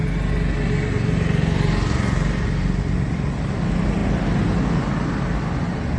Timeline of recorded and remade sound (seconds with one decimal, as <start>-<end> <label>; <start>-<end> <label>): 0.0-6.0 recorded